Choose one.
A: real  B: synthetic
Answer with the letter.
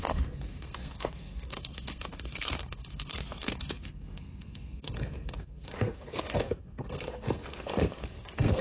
B